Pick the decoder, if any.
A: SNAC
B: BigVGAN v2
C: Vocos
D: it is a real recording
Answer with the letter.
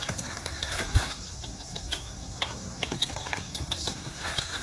A